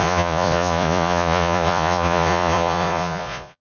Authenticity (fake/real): fake